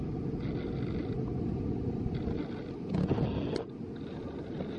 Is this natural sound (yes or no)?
yes